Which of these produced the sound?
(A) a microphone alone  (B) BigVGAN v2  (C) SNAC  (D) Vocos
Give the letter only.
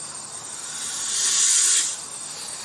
A